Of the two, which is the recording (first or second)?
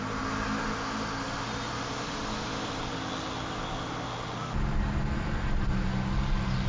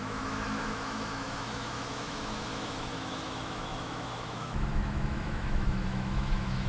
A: first